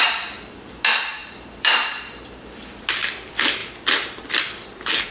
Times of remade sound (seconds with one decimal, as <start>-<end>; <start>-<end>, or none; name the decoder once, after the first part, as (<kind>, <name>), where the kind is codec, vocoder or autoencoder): 1.2-2.4 (vocoder, BigVGAN v2); 3.6-5.1